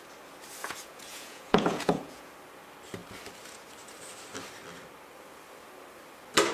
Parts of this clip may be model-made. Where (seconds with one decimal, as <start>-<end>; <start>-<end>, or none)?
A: 0.6-2.3